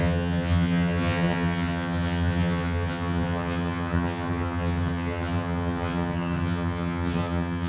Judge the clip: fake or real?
fake